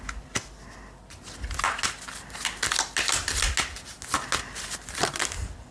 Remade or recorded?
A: recorded